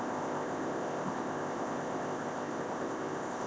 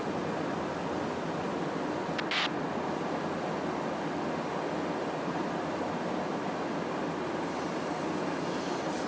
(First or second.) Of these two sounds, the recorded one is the second